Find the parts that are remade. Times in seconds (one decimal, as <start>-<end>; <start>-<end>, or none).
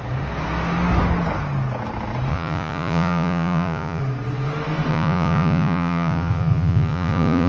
2.3-4.0; 4.9-7.5